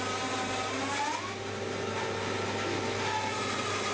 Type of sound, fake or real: real